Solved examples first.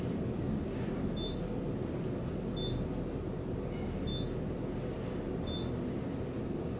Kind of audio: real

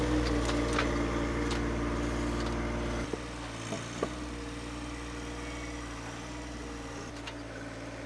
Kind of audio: real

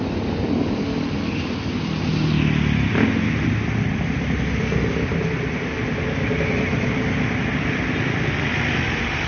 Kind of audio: real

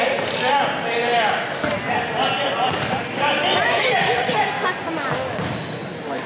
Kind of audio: real